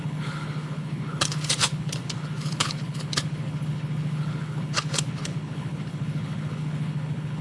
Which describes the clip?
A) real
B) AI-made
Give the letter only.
B